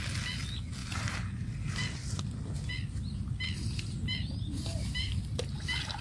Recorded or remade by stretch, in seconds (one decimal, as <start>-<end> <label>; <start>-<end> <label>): 0.0-0.8 recorded; 0.8-2.2 remade; 2.2-4.1 recorded; 4.1-5.3 remade; 5.3-6.0 recorded